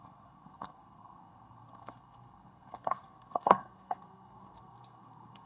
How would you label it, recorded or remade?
remade